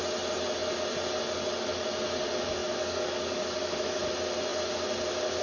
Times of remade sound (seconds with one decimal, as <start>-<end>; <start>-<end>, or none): 2.6-4.0